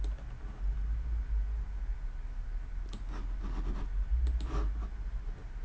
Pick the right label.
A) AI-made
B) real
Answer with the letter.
B